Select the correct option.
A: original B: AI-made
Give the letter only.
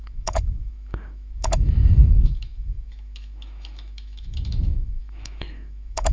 B